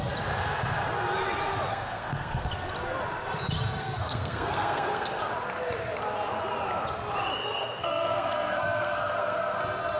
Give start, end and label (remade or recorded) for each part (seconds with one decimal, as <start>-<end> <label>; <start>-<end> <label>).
0.0-1.7 recorded; 1.7-2.5 remade; 2.5-3.8 recorded; 3.8-5.2 remade; 5.2-7.4 recorded; 7.4-9.6 remade; 9.6-10.0 recorded